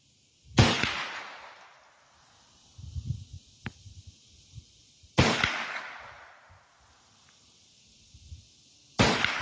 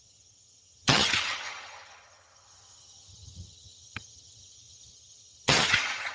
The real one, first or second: first